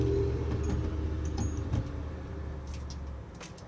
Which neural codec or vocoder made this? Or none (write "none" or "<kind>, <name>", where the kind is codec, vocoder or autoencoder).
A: none